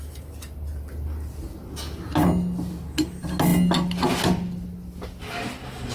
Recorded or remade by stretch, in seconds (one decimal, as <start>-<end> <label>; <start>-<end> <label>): 0.0-5.9 recorded